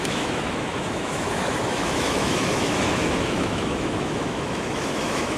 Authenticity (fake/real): fake